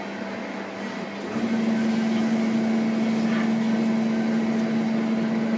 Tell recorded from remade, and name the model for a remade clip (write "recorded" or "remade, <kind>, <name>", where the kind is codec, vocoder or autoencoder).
recorded